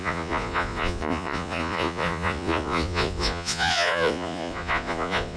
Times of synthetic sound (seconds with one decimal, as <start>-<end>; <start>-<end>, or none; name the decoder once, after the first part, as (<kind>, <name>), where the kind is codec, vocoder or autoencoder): 0.0-5.4 (vocoder, Vocos)